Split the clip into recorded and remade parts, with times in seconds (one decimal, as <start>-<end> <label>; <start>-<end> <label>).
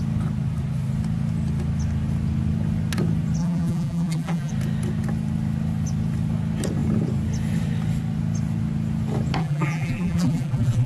0.0-3.4 recorded; 3.4-4.5 remade; 4.5-9.4 recorded; 9.4-10.9 remade